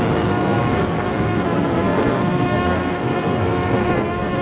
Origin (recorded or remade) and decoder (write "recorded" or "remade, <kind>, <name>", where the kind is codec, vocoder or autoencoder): remade, codec, SNAC